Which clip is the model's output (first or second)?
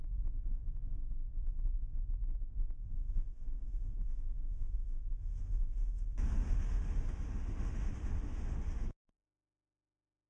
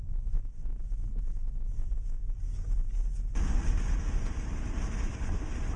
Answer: first